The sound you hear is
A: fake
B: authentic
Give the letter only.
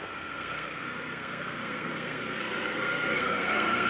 A